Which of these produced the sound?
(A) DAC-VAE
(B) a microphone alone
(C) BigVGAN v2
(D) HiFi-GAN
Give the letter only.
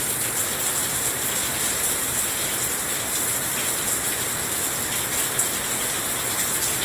B